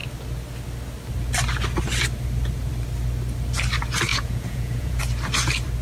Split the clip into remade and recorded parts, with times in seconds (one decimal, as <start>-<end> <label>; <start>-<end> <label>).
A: 0.0-4.1 recorded; 4.1-5.0 remade; 5.0-5.8 recorded